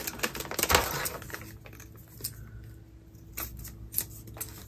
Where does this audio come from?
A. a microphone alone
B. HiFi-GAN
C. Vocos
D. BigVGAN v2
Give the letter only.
A